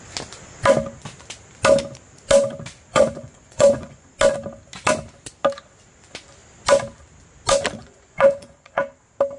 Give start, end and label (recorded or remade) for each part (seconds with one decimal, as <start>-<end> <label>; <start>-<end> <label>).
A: 0.0-2.9 recorded; 2.9-4.1 remade; 4.1-7.8 recorded; 7.8-8.8 remade; 8.8-9.4 recorded